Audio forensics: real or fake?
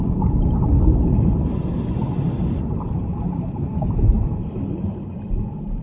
real